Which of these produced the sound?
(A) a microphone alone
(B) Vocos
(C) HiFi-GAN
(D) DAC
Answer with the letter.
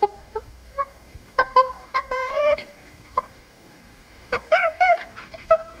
D